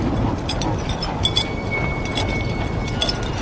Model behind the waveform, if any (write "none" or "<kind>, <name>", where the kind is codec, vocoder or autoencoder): none